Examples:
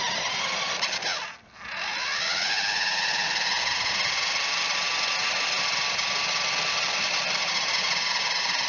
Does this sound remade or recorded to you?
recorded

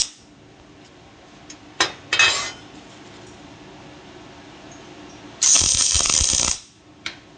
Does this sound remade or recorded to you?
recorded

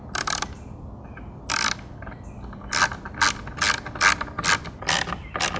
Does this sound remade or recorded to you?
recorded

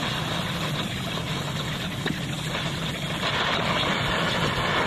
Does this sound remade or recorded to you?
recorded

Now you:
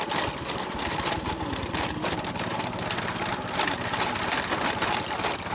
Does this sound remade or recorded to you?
recorded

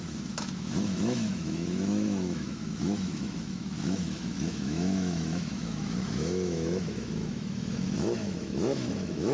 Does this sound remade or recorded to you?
remade